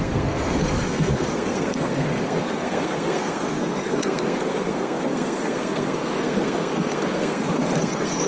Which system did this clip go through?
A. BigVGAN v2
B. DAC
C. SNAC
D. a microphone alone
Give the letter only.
C